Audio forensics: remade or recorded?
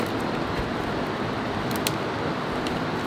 recorded